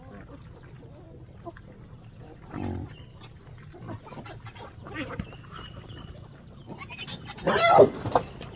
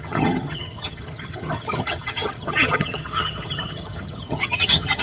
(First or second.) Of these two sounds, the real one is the first